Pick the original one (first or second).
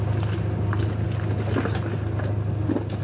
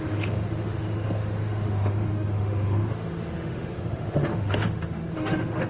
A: first